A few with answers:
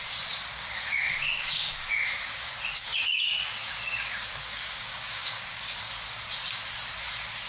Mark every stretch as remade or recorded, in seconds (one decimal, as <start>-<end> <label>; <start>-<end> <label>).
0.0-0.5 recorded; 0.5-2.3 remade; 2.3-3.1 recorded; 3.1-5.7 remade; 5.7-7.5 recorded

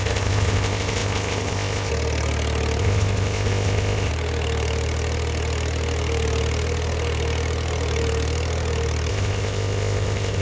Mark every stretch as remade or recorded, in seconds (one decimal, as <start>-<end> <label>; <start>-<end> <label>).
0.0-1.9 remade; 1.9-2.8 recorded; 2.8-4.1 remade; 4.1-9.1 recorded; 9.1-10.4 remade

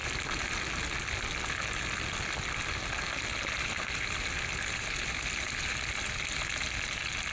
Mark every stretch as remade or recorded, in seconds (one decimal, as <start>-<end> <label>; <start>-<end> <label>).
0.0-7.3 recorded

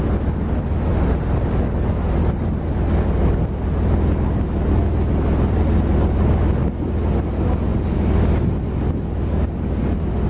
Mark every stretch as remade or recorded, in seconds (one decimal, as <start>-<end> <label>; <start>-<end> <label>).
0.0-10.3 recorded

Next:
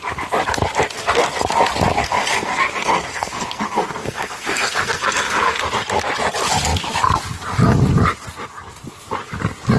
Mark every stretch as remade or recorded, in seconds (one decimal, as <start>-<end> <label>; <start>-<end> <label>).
0.0-2.0 recorded; 2.0-5.6 remade; 5.6-9.8 recorded

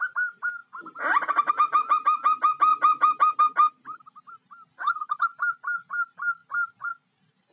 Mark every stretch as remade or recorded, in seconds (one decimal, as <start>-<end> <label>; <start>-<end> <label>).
0.0-7.5 recorded

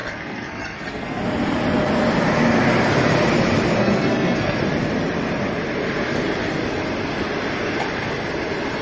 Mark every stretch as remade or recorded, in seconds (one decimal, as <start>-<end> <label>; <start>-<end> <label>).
0.0-1.2 remade; 1.2-3.8 recorded; 3.8-4.6 remade; 4.6-8.8 recorded

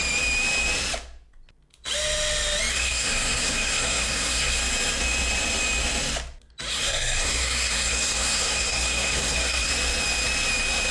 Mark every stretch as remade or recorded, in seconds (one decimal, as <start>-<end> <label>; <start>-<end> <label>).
0.0-2.7 recorded; 2.7-4.6 remade; 4.6-6.7 recorded; 6.7-9.7 remade; 9.7-10.9 recorded